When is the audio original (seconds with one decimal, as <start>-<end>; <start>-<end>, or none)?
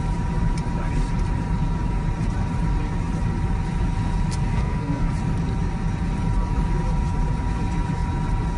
0.0-4.5; 5.1-8.6